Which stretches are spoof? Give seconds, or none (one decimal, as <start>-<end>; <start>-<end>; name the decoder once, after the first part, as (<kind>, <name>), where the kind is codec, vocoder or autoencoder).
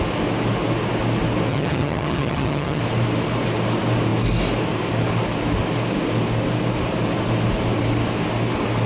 1.5-2.8 (vocoder, HiFi-GAN)